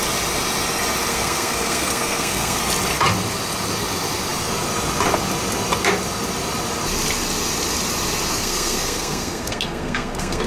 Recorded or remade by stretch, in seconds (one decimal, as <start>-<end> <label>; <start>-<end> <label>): 0.0-1.1 recorded; 1.1-2.6 remade; 2.6-8.3 recorded; 8.3-10.5 remade

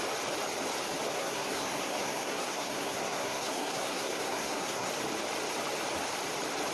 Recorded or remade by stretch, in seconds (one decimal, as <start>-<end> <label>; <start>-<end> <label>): 0.0-1.1 recorded; 1.1-4.9 remade; 4.9-6.7 recorded

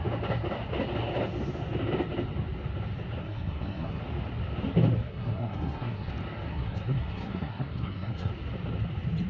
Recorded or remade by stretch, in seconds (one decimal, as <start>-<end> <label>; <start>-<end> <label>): 0.0-3.2 recorded; 3.2-4.0 remade; 4.0-5.1 recorded; 5.1-6.1 remade; 6.1-6.5 recorded; 6.5-8.3 remade; 8.3-9.3 recorded

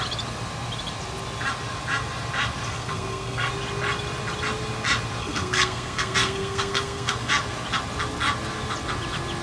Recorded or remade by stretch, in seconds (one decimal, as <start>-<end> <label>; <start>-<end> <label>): 0.0-2.7 recorded; 2.7-3.5 remade; 3.5-5.2 recorded; 5.2-7.3 remade; 7.3-9.4 recorded

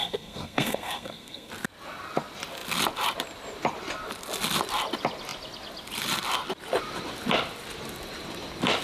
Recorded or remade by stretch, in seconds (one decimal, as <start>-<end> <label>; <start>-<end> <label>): 0.0-1.5 remade; 1.5-8.8 recorded

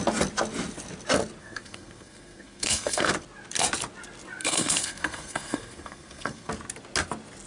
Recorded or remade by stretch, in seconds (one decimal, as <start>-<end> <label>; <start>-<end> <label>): 0.0-1.4 recorded; 1.4-3.1 remade; 3.1-4.4 recorded; 4.4-6.5 remade; 6.5-7.5 recorded